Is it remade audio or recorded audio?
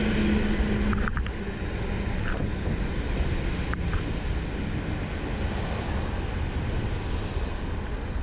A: recorded